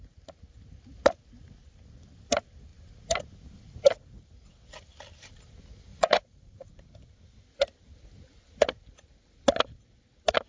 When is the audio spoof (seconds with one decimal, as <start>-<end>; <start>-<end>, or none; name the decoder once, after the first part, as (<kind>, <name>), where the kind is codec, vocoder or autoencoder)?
5.9-6.7 (vocoder, Vocos)